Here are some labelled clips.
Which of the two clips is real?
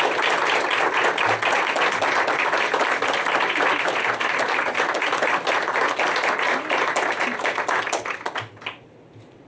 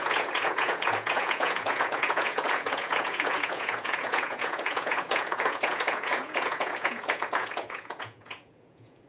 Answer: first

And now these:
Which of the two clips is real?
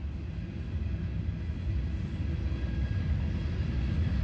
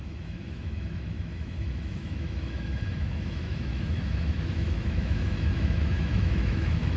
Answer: first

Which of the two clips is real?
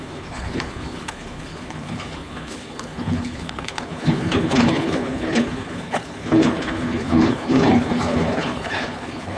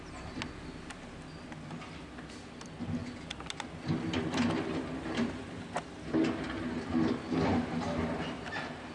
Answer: second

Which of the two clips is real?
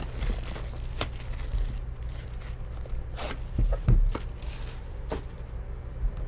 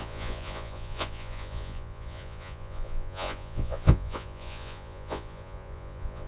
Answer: first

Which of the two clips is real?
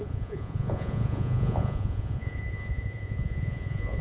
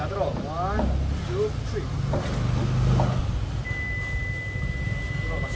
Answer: second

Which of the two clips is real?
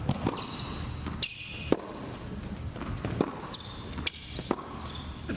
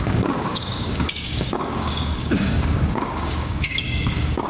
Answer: first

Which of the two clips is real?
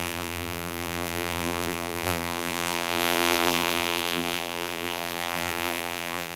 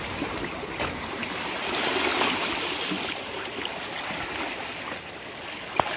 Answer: second